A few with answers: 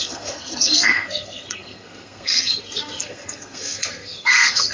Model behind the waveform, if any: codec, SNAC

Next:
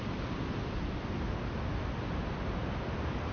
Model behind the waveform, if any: none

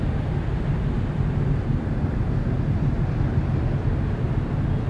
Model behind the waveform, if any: none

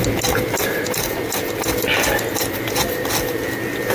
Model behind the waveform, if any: none